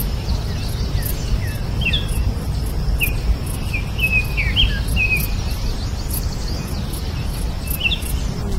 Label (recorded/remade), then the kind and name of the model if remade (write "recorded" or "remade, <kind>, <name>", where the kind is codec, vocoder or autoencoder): recorded